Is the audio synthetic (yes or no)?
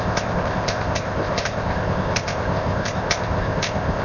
yes